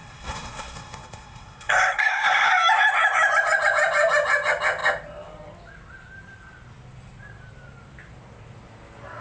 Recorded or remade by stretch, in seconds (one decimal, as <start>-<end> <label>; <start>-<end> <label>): 0.0-2.5 remade; 2.5-9.2 recorded